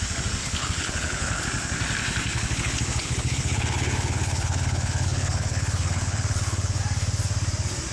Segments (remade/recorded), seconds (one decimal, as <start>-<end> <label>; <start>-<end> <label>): 0.0-0.4 recorded; 0.4-1.4 remade; 1.4-2.3 recorded; 2.3-6.8 remade; 6.8-7.9 recorded